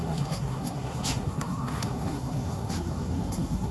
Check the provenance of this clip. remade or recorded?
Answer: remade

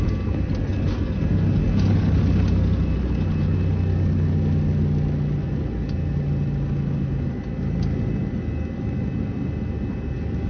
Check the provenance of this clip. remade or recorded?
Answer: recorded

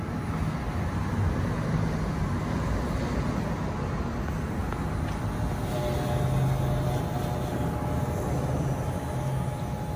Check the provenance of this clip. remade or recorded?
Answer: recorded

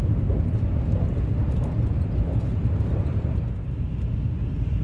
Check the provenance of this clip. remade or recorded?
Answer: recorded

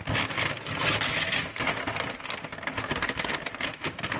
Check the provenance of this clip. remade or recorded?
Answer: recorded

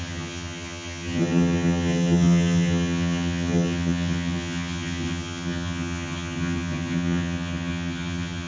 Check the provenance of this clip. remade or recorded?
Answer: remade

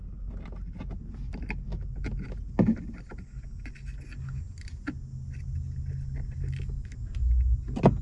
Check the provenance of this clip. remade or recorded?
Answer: recorded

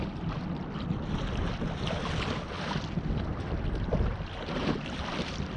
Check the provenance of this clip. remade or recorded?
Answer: recorded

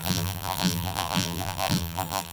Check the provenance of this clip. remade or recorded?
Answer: remade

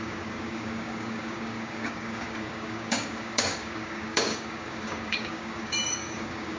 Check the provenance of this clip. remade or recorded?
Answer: remade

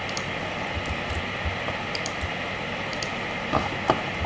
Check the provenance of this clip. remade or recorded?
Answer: recorded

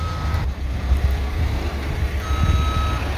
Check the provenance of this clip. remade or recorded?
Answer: recorded